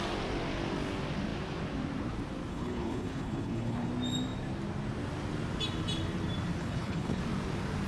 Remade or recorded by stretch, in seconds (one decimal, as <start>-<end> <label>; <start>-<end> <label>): 0.0-2.5 recorded; 2.5-3.9 remade; 3.9-6.6 recorded; 6.6-7.2 remade; 7.2-7.9 recorded

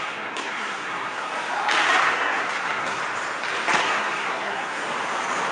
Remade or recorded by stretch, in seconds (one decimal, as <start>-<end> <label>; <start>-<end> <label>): 0.0-1.3 remade; 1.3-2.0 recorded; 2.0-3.0 remade; 3.0-3.8 recorded; 3.8-4.8 remade; 4.8-5.5 recorded

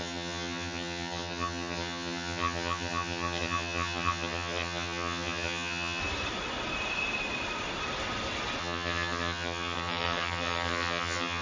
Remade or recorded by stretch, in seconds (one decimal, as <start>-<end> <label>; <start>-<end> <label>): 0.0-6.0 remade; 6.0-8.6 recorded; 8.6-11.4 remade

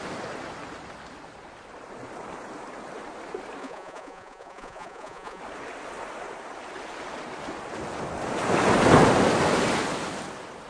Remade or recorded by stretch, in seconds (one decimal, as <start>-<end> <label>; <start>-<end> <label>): 0.0-3.6 recorded; 3.6-5.4 remade; 5.4-10.7 recorded